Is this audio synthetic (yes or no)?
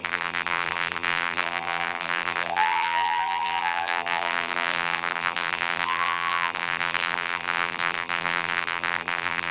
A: yes